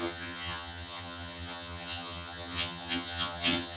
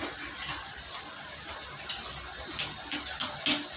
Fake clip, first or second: first